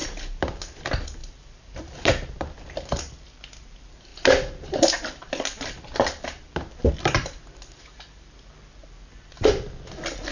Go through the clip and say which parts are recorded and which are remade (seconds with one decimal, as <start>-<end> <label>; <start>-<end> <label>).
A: 0.0-0.6 remade; 0.6-1.2 recorded; 1.2-3.0 remade; 3.0-4.1 recorded; 4.1-6.9 remade; 6.9-10.3 recorded